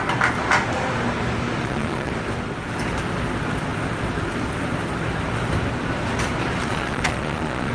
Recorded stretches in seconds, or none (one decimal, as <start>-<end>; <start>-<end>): 0.0-1.6; 2.1-6.6